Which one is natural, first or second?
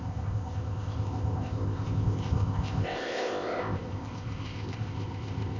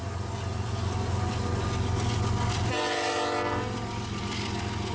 second